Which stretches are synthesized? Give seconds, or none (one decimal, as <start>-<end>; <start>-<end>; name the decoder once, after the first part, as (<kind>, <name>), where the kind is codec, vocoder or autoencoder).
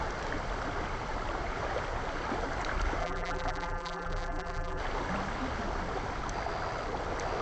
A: 3.0-4.8 (vocoder, BigVGAN v2)